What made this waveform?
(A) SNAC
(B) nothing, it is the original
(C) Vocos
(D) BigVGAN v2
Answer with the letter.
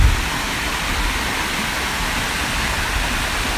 B